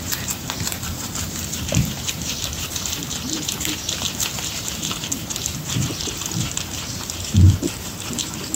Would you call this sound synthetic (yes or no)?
yes